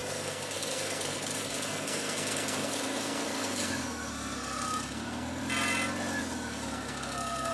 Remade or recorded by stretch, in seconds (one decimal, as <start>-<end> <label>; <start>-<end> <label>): 0.0-5.4 remade; 5.4-6.2 recorded; 6.2-7.5 remade